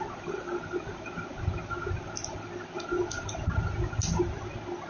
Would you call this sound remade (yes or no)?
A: no